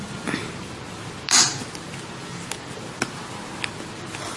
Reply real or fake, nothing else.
real